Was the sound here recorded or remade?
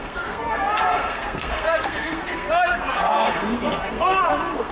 remade